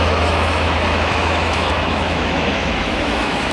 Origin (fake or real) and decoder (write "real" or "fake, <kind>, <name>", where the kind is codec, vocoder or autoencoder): fake, autoencoder, DAC-VAE